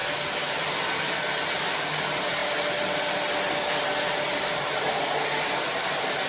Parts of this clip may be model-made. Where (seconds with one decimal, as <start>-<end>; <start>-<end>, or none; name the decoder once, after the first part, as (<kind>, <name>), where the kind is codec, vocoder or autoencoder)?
none